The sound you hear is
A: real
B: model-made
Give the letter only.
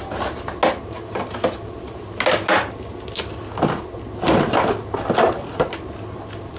A